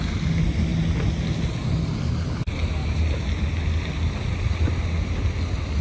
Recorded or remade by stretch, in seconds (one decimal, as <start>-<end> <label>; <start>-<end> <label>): 0.0-5.8 recorded